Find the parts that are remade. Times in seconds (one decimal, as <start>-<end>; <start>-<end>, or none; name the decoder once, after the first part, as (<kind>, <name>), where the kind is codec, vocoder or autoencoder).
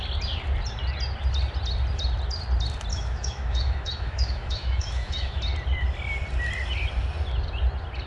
2.9-5.4 (autoencoder, DAC-VAE)